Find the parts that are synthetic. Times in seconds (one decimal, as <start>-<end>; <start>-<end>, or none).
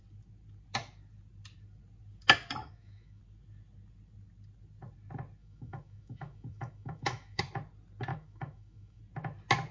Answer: 2.6-3.2; 5.4-7.4; 8.1-9.0